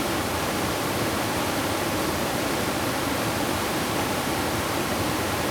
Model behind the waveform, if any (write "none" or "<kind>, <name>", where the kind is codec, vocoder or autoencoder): vocoder, BigVGAN v2